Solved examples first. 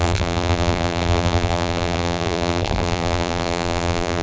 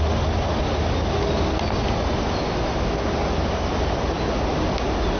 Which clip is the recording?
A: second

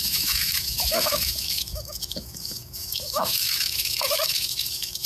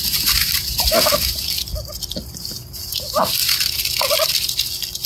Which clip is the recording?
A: second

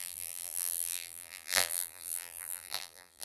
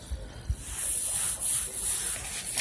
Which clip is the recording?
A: second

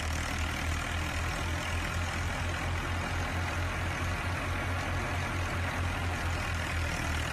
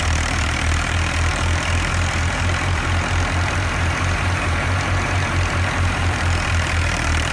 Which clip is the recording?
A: first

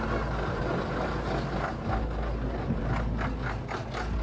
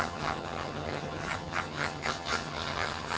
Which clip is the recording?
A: first